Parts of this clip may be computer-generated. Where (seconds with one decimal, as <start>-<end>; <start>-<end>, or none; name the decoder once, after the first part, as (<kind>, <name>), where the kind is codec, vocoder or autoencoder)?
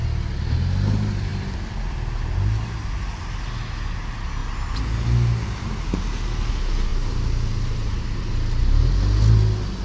6.9-8.3 (vocoder, BigVGAN v2)